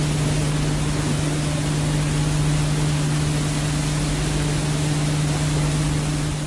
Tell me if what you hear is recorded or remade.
recorded